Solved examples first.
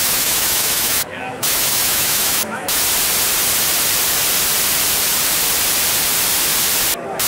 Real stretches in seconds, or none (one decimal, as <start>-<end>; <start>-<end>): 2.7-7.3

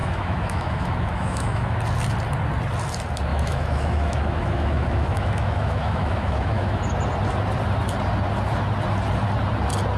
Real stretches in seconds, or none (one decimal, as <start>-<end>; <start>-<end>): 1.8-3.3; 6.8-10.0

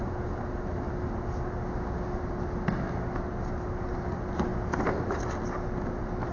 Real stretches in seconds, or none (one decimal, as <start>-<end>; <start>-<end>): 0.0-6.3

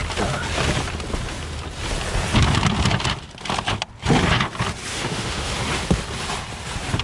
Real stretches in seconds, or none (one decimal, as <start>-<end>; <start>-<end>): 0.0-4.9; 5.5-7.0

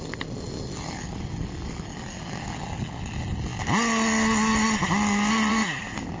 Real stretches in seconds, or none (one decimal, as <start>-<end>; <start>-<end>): 0.0-6.2